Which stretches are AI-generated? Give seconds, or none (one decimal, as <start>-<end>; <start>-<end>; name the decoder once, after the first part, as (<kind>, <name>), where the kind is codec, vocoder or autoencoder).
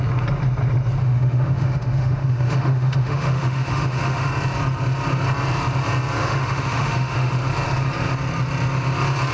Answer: 1.0-4.3 (autoencoder, DAC-VAE); 6.2-7.3